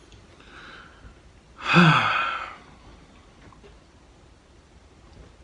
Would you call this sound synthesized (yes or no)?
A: no